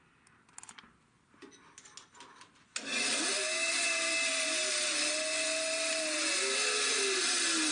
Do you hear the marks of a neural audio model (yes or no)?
no